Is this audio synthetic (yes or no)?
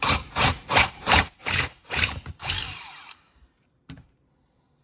yes